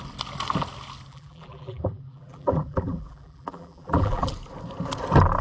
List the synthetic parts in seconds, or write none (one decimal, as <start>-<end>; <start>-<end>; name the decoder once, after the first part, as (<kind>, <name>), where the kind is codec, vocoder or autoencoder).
1.1-4.3 (vocoder, BigVGAN v2)